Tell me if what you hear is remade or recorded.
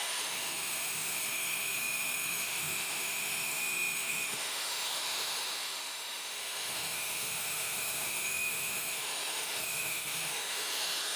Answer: remade